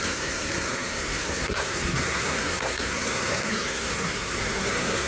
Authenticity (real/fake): fake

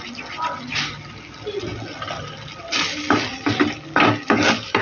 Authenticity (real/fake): real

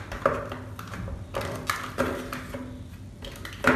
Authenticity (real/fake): real